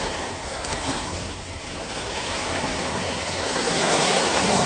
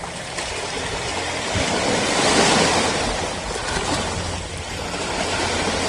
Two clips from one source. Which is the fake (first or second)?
first